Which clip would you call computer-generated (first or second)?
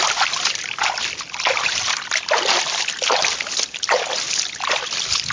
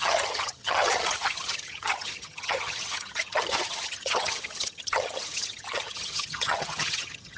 second